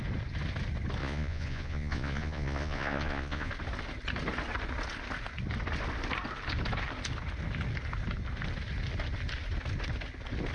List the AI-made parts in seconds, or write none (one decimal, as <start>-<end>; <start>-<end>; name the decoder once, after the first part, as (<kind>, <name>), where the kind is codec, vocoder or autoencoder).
1.0-3.5 (vocoder, Vocos)